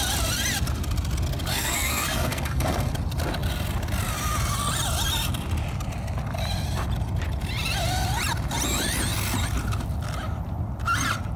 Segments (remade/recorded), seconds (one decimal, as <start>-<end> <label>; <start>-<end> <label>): 0.0-1.5 recorded; 1.5-2.9 remade; 2.9-11.4 recorded